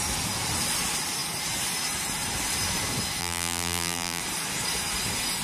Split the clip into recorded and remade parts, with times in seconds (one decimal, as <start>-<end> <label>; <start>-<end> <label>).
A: 0.0-3.2 recorded; 3.2-4.2 remade; 4.2-5.4 recorded